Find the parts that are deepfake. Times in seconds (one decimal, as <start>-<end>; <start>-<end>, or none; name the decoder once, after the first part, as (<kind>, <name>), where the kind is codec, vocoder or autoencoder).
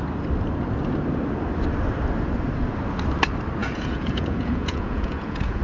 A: 3.6-5.6 (vocoder, Vocos)